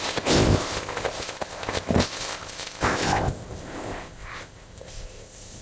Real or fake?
fake